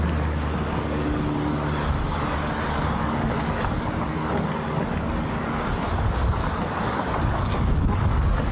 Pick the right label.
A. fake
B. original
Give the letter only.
A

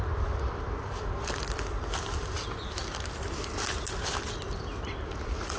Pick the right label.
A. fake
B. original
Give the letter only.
B